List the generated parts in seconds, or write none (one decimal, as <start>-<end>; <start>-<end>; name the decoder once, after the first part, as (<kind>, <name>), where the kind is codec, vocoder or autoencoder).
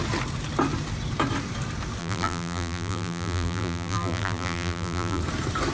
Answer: 2.0-5.2 (vocoder, BigVGAN v2)